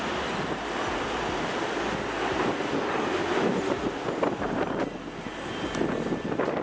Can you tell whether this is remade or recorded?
recorded